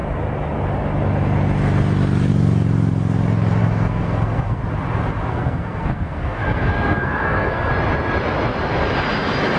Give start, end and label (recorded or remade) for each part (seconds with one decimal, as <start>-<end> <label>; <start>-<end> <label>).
0.0-3.6 recorded; 3.6-4.6 remade; 4.6-5.3 recorded; 5.3-7.7 remade; 7.7-9.6 recorded